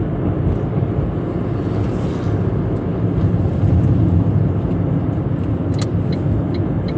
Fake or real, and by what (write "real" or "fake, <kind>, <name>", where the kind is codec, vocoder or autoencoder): real